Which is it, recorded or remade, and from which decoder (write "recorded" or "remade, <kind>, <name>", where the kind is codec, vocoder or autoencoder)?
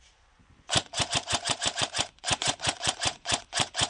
remade, vocoder, Vocos